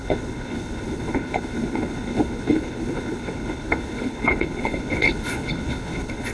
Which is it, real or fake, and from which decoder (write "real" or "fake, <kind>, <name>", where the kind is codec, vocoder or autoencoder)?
fake, codec, HILCodec